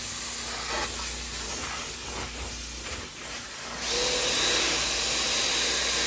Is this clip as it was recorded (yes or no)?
yes